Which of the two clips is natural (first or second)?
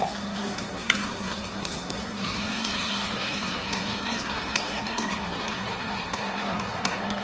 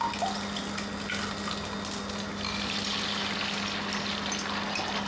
second